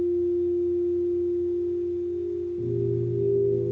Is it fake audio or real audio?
real